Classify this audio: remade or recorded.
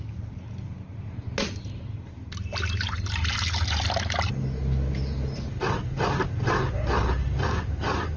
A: recorded